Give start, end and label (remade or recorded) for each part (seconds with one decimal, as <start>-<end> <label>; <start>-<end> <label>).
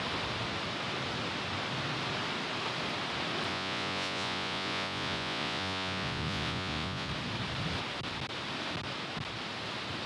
0.0-3.5 recorded; 3.5-7.1 remade; 7.1-10.1 recorded